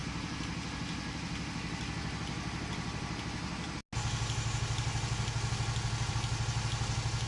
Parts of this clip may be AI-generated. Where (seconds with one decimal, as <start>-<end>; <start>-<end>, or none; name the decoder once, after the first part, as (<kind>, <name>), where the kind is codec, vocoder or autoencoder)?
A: none